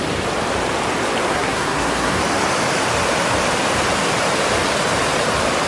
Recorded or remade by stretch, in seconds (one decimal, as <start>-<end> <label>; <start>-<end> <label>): 0.0-1.3 recorded; 1.3-2.2 remade; 2.2-5.7 recorded